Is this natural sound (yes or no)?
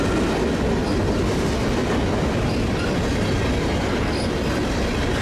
yes